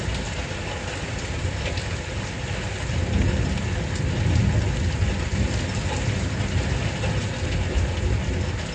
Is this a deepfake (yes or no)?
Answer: no